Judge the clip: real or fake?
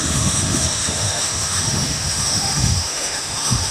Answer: fake